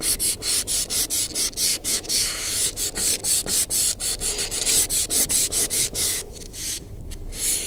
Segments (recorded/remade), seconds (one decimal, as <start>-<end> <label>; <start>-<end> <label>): 0.0-1.7 recorded; 1.7-2.8 remade; 2.8-5.4 recorded; 5.4-6.8 remade; 6.8-7.7 recorded